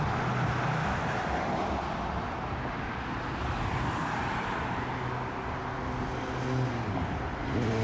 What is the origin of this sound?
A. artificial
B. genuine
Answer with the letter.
B